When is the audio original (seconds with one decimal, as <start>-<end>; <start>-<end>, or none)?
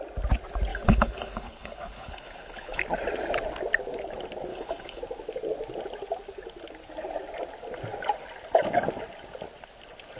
0.0-0.7; 2.8-4.5; 5.0-10.2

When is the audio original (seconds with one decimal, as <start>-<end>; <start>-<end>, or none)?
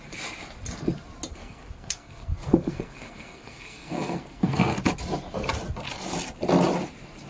0.0-1.3; 4.8-7.3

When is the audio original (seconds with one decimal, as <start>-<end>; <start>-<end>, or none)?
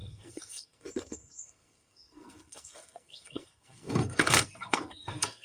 none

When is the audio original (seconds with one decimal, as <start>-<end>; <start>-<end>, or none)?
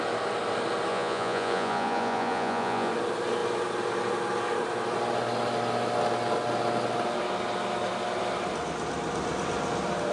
0.0-0.9; 2.9-10.1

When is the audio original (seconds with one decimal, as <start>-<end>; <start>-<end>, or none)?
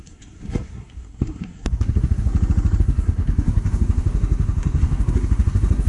2.3-2.8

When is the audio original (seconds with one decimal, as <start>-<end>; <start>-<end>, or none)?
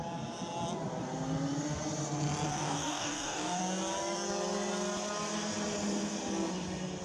0.0-2.5; 3.6-7.0